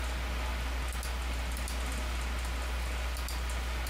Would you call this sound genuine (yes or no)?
yes